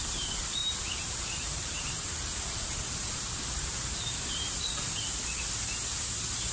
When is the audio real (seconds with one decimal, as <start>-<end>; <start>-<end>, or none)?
0.0-0.6; 4.5-6.5

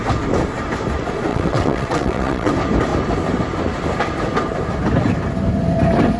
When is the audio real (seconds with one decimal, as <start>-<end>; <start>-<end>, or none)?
0.0-1.3; 2.5-6.2

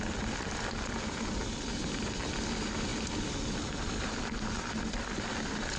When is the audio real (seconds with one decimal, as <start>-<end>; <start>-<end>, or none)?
0.0-5.8